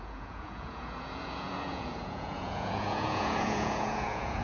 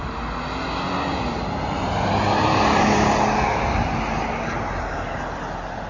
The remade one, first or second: first